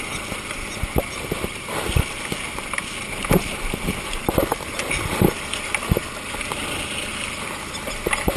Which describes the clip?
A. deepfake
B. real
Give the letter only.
B